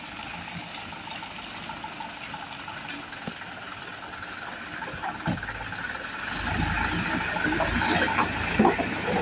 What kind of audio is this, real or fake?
real